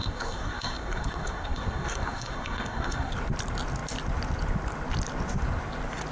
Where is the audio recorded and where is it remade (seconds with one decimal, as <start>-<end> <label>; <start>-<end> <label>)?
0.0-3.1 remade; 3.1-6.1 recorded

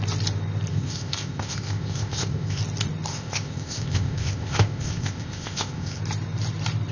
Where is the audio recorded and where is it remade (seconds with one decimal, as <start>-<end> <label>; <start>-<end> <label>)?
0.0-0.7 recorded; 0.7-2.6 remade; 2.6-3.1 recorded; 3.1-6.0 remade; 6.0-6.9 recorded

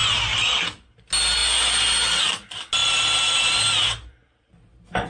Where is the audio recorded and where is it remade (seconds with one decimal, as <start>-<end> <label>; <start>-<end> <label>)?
0.0-5.1 recorded

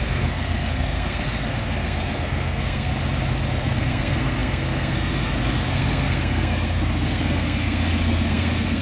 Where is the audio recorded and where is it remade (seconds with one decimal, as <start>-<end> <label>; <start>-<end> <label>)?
0.0-2.9 remade; 2.9-3.5 recorded; 3.5-8.8 remade

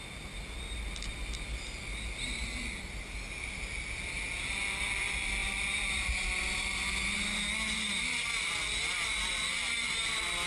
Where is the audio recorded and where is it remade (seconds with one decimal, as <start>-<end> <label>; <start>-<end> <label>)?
0.0-10.5 recorded